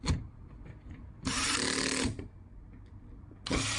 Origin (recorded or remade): recorded